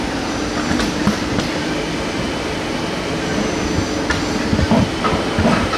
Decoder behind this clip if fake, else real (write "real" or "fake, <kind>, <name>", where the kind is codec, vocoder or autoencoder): real